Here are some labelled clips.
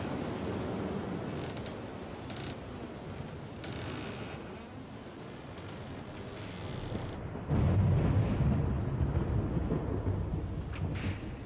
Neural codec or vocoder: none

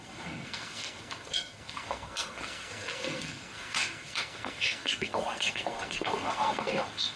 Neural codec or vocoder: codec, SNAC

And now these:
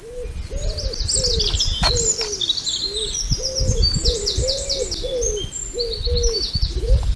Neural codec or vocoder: none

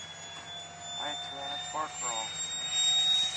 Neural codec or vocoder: none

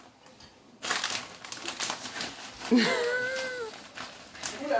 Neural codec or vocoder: none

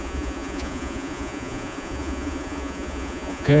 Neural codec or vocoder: vocoder, Vocos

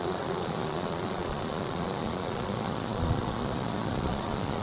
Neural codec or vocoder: vocoder, Vocos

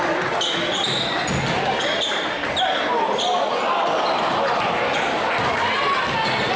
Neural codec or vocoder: none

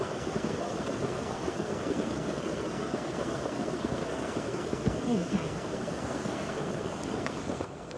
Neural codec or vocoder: codec, SNAC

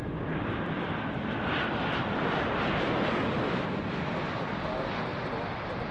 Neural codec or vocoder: none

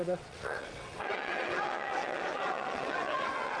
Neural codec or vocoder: vocoder, WaveNeXt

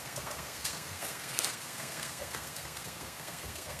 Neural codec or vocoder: codec, SNAC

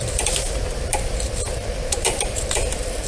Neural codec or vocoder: vocoder, BigVGAN v2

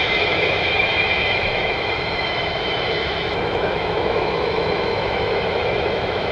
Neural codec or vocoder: autoencoder, DAC-VAE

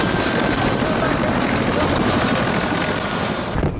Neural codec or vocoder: none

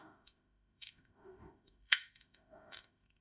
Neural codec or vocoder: autoencoder, DAC-VAE